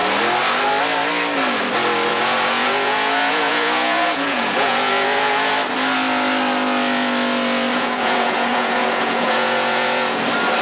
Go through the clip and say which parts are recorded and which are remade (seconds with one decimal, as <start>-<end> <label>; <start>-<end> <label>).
0.0-2.1 recorded; 2.1-5.5 remade; 5.5-7.7 recorded; 7.7-10.2 remade; 10.2-10.6 recorded